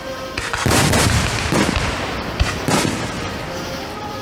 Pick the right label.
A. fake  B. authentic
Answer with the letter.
B